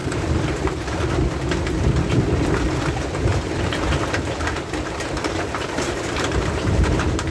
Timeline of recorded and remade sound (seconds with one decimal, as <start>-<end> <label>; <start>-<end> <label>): 0.0-1.1 remade; 1.1-3.3 recorded; 3.3-7.3 remade